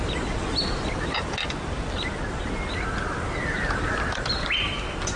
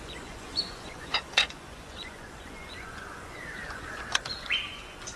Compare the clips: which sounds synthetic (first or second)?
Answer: second